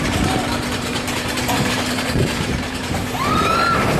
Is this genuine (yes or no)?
no